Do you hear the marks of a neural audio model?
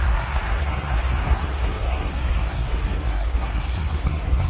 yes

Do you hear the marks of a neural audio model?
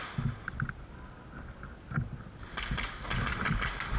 no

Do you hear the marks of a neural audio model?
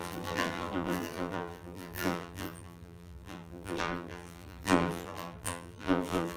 yes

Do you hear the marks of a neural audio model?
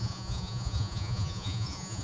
yes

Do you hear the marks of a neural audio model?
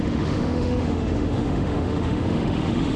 yes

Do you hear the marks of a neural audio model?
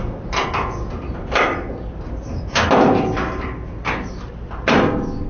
no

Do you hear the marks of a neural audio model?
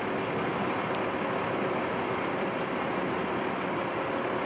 no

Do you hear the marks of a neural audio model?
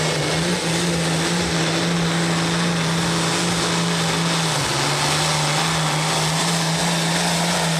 no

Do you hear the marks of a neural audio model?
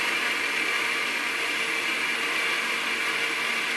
no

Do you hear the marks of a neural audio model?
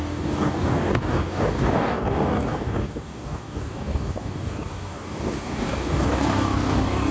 yes